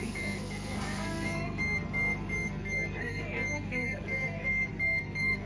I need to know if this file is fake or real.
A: fake